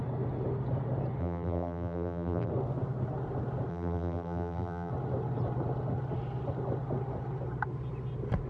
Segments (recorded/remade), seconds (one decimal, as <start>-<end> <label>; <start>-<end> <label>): 0.0-1.2 recorded; 1.2-2.5 remade; 2.5-3.7 recorded; 3.7-4.9 remade; 4.9-8.5 recorded